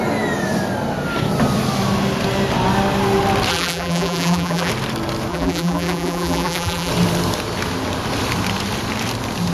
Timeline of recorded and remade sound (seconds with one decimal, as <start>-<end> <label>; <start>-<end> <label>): 0.0-3.5 recorded; 3.5-4.7 remade; 4.7-5.3 recorded; 5.3-6.9 remade; 6.9-9.5 recorded